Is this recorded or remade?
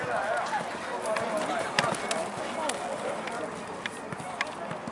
recorded